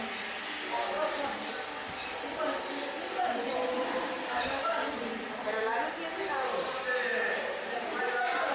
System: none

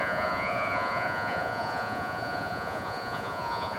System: vocoder, Vocos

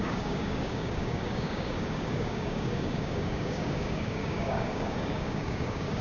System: codec, DAC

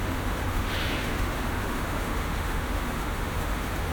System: autoencoder, DAC-VAE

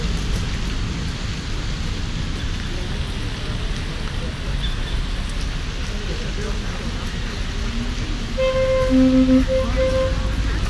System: none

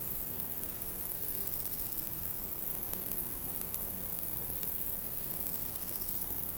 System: codec, SNAC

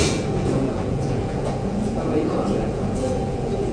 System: vocoder, Vocos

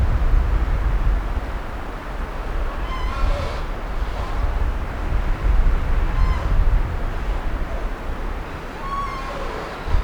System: none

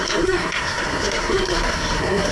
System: codec, SNAC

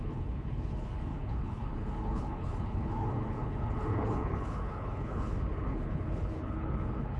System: codec, HILCodec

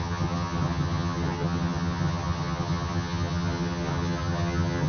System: vocoder, HiFi-GAN